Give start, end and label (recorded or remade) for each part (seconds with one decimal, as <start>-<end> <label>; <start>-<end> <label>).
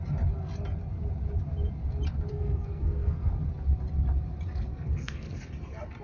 0.0-2.3 recorded; 2.3-3.3 remade; 3.3-4.7 recorded; 4.7-5.4 remade; 5.4-6.0 recorded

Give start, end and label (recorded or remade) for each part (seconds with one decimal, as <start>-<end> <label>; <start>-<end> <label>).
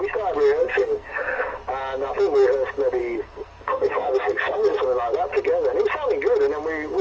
0.0-0.6 recorded; 0.6-1.6 remade; 1.6-3.0 recorded; 3.0-4.8 remade; 4.8-7.0 recorded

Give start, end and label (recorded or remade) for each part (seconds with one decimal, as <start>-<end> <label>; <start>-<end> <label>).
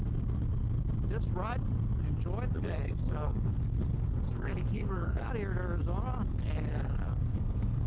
0.0-2.5 recorded; 2.5-5.3 remade; 5.3-6.3 recorded; 6.3-7.9 remade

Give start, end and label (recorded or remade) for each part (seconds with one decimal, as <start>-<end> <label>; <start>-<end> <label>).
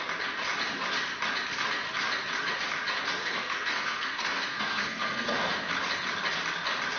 0.0-3.2 recorded; 3.2-5.5 remade; 5.5-7.0 recorded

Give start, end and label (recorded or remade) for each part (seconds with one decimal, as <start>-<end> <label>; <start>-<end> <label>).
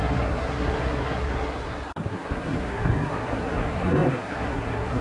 0.0-5.0 remade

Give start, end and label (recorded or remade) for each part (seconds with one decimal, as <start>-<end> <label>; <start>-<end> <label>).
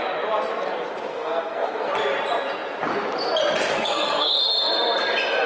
0.0-1.1 recorded; 1.1-1.9 remade; 1.9-3.7 recorded; 3.7-4.3 remade; 4.3-5.5 recorded